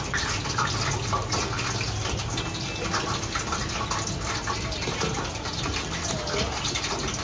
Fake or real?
real